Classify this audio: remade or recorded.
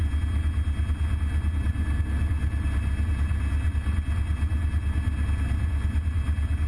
recorded